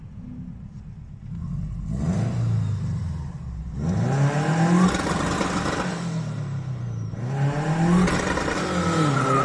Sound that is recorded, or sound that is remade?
recorded